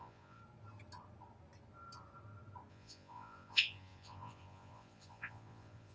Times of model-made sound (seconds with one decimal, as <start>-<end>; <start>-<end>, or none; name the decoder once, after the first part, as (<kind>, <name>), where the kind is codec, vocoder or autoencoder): 0.0-0.4 (vocoder, Vocos); 2.7-5.9